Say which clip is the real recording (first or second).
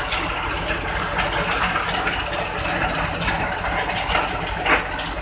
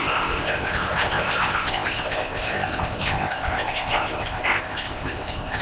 first